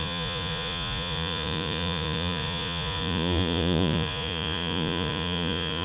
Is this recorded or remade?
remade